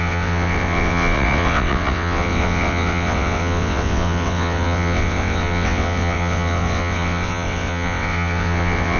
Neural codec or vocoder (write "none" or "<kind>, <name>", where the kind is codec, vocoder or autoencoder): vocoder, WaveNeXt